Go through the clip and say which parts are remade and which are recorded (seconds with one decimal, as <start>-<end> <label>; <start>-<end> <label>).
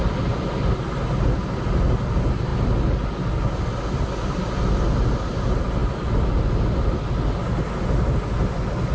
0.0-5.8 recorded; 5.8-7.1 remade; 7.1-8.9 recorded